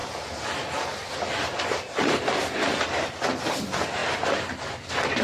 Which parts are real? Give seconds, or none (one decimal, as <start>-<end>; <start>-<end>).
4.0-4.7